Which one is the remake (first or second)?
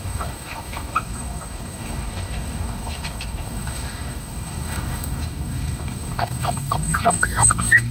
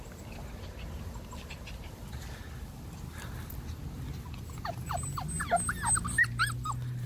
first